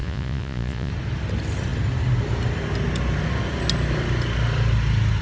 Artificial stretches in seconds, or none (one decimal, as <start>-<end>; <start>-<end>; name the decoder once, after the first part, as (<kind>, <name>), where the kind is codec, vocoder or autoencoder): 0.0-0.9 (vocoder, Vocos)